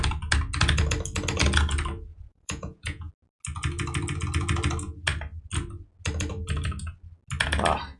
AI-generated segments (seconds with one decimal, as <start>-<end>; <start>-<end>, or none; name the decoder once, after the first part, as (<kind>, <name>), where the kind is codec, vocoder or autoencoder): 2.1-3.1 (vocoder, Vocos)